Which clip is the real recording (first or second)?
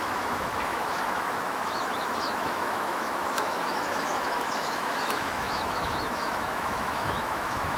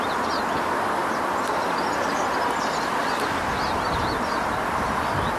second